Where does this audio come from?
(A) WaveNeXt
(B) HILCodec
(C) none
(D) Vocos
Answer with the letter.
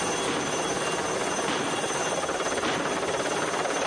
C